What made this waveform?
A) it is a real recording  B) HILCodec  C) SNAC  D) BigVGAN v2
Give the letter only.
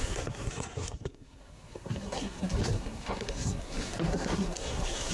C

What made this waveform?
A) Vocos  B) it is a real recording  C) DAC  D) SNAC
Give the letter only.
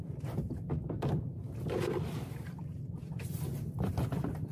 B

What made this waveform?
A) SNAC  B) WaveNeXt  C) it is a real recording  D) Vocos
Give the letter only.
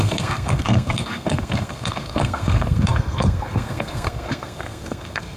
A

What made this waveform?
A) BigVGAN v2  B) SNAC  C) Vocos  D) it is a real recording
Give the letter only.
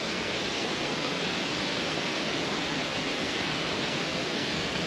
B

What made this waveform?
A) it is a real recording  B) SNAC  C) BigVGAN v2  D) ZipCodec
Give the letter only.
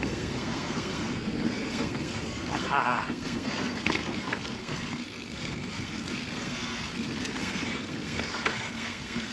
B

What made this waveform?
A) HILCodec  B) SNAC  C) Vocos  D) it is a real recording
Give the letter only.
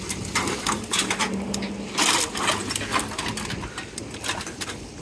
D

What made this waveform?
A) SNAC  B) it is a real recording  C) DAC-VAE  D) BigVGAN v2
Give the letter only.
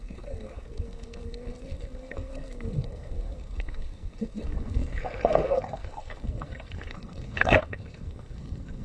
A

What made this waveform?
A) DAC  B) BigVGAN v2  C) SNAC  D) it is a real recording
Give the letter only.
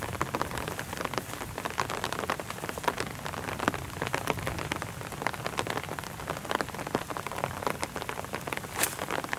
D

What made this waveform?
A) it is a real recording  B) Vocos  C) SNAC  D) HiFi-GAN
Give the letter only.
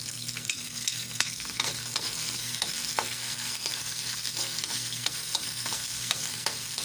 C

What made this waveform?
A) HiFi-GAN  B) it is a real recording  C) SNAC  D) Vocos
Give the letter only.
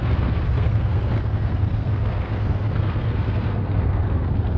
C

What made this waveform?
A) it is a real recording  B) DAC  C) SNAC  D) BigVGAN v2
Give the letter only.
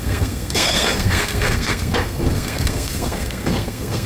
C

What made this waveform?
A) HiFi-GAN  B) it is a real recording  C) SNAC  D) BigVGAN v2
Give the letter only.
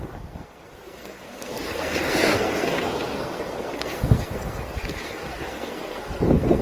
C